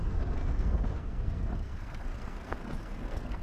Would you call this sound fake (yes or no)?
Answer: yes